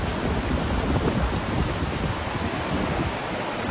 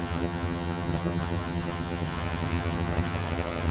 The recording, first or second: first